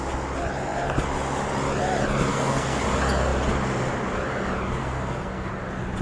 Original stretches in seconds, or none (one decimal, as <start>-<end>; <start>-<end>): 0.0-2.3; 2.8-4.8; 5.5-6.0